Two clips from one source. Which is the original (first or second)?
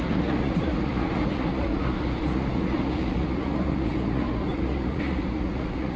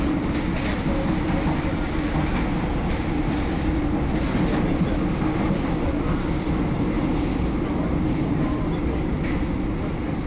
second